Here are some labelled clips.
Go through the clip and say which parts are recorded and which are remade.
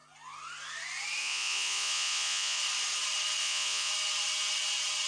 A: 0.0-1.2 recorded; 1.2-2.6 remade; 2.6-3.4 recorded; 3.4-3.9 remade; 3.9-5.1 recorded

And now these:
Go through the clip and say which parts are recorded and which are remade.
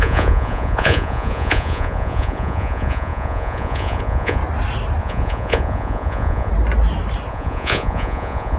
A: 0.0-4.4 remade; 4.4-5.0 recorded; 5.0-6.5 remade; 6.5-7.3 recorded; 7.3-8.6 remade